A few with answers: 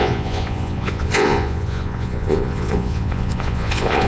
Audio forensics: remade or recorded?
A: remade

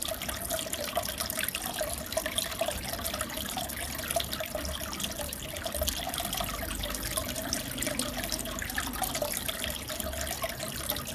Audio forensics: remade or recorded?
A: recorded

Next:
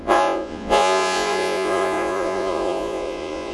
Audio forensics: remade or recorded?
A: remade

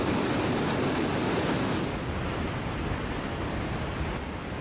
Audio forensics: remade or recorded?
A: recorded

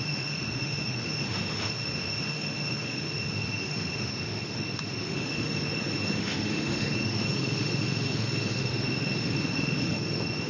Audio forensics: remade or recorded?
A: remade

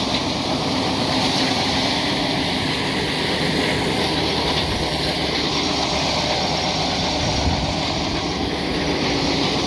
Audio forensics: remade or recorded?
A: recorded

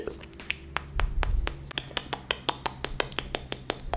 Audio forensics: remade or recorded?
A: recorded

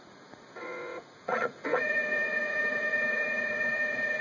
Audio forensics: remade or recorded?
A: remade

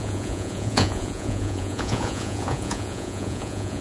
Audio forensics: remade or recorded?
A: remade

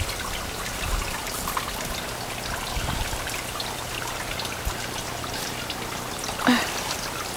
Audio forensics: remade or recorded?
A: recorded